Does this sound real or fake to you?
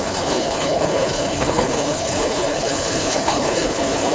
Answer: fake